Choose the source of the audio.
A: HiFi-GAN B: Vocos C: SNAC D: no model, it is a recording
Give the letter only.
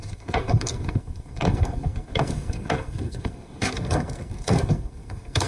C